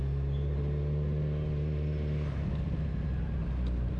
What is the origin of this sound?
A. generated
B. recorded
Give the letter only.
B